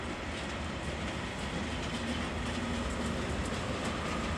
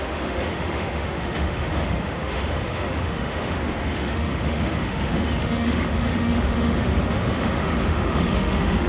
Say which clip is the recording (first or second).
first